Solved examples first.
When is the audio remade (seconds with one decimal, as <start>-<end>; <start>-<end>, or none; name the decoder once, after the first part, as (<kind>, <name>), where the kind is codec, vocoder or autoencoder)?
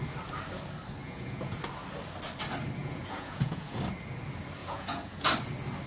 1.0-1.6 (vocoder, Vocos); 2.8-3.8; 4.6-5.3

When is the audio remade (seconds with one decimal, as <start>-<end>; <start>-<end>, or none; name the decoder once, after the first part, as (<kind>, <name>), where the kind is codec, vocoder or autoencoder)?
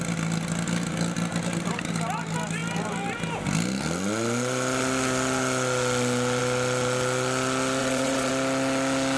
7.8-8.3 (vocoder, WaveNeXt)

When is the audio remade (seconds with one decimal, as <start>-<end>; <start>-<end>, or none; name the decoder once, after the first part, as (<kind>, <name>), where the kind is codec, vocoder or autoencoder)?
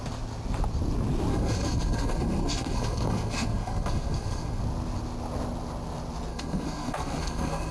1.3-4.6 (codec, SNAC); 6.3-7.7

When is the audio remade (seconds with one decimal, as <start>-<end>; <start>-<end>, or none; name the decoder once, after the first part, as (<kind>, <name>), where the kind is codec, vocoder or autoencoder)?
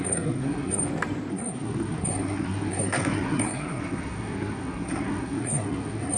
0.0-0.8 (codec, SNAC); 1.3-6.2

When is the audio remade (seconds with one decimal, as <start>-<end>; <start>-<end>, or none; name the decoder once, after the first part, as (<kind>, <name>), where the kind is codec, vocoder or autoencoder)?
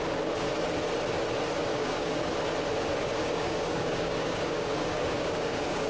1.7-2.3 (codec, DAC); 3.2-5.9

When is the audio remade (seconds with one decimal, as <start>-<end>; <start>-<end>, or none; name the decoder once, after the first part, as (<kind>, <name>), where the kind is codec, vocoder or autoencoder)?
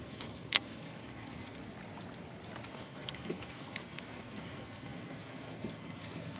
0.0-1.6 (codec, SNAC); 2.7-6.4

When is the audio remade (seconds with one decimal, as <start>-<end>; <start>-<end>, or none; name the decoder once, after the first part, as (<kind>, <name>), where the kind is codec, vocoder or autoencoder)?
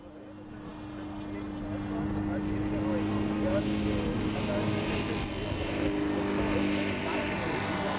none